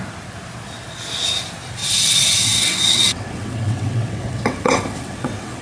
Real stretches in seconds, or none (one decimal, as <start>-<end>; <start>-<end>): 0.0-1.8